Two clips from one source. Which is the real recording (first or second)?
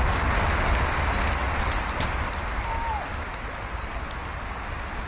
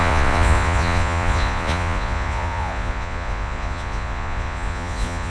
first